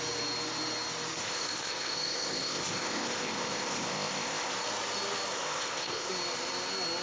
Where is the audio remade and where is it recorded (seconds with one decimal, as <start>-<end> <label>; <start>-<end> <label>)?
0.0-1.2 recorded; 1.2-4.5 remade; 4.5-5.3 recorded; 5.3-6.1 remade; 6.1-7.0 recorded